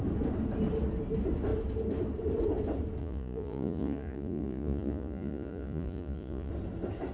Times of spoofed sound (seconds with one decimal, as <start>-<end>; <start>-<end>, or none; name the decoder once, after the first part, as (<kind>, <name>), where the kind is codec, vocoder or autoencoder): 3.0-6.5 (vocoder, Vocos)